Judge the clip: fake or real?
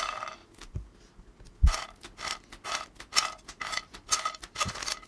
real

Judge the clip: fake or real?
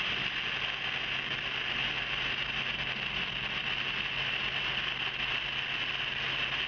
real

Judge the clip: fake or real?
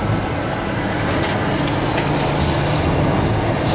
real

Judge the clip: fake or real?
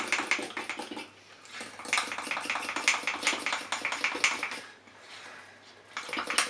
real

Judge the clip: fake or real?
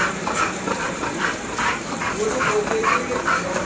fake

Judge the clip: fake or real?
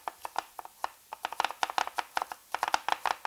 real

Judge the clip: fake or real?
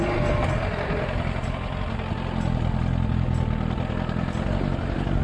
real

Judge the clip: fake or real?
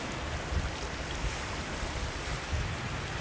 real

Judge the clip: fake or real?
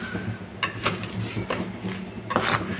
real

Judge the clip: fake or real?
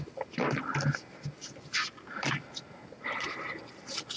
real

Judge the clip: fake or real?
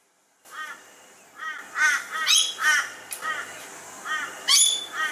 real